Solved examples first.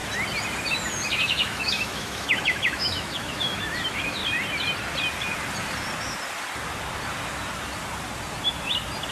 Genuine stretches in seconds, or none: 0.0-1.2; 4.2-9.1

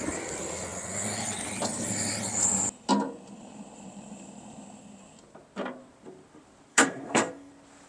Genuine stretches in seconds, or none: 0.0-6.7; 7.5-7.9

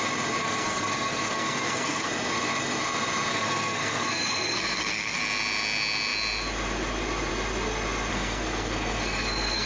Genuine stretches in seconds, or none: 0.0-0.4; 2.1-3.3; 5.2-8.1

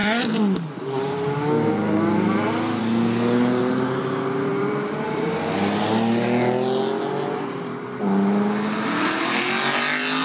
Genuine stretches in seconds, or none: 0.0-4.5; 5.4-10.2

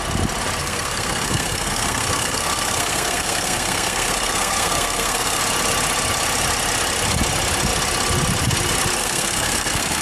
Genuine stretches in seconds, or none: 0.0-0.6; 5.4-9.0